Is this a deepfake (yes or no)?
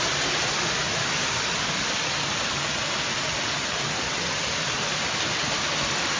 no